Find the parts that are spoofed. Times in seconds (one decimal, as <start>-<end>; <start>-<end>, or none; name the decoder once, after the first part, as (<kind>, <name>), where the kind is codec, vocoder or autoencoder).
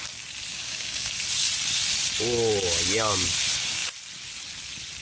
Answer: 0.5-1.1 (codec, DAC)